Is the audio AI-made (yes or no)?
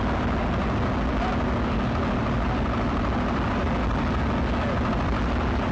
no